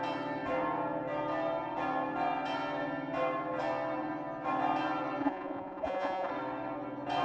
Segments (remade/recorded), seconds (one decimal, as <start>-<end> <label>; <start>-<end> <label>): 0.0-5.2 recorded; 5.2-6.3 remade; 6.3-7.2 recorded

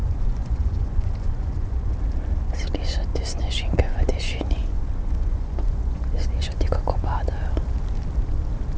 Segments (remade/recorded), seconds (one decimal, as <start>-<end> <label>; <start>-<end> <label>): 0.0-1.9 remade; 1.9-3.1 recorded; 3.1-7.0 remade; 7.0-8.8 recorded

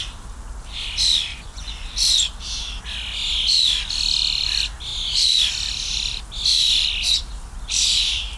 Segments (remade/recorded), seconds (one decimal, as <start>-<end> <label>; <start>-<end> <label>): 0.0-1.3 recorded; 1.3-1.9 remade; 1.9-8.4 recorded